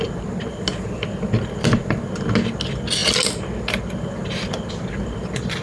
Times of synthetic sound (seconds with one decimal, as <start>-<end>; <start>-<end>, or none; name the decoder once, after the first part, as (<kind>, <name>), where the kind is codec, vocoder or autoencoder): none